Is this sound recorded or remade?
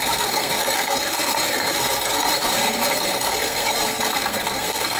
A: remade